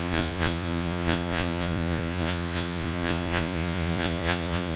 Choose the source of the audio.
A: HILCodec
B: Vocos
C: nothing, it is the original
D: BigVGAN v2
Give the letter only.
B